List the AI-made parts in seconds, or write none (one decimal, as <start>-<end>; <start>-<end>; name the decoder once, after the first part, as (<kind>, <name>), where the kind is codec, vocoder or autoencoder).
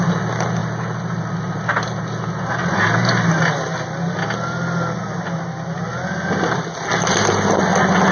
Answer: none